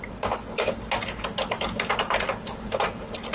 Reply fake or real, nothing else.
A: real